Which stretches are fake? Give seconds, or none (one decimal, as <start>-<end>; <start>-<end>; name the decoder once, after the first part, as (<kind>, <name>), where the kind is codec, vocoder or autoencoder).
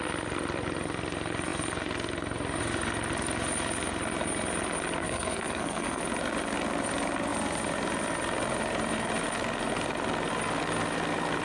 5.0-6.0 (codec, SNAC)